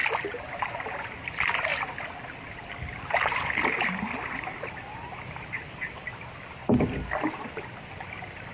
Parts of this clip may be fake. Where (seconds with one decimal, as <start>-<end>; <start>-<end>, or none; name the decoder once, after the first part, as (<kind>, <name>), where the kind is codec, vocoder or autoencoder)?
0.5-1.7 (vocoder, BigVGAN v2); 4.7-6.6; 7.3-8.5